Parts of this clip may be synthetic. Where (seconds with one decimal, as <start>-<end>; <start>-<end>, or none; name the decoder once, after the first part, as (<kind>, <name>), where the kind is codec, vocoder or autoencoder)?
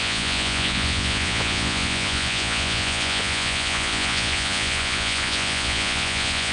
0.0-6.5 (vocoder, Vocos)